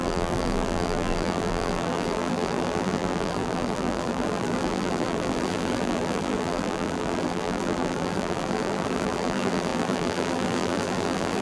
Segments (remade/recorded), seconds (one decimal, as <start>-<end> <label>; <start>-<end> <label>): 0.0-11.4 remade